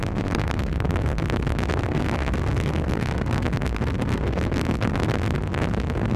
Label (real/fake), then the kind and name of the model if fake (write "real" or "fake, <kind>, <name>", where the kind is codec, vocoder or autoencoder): fake, codec, SNAC